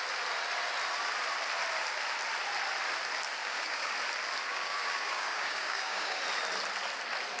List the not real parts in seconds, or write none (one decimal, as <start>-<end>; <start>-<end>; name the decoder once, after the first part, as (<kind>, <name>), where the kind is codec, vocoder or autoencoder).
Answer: 3.4-3.9 (codec, DAC); 4.5-6.2